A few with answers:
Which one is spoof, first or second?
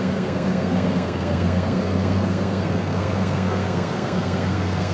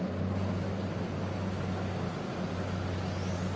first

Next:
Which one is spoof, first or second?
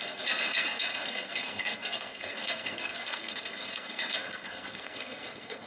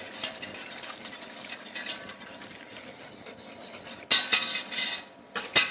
first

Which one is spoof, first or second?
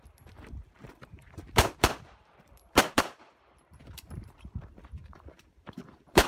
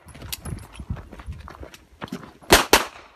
first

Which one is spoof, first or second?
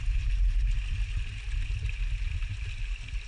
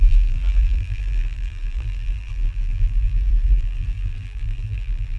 second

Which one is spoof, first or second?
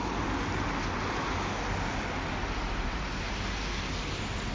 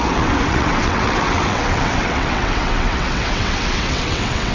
second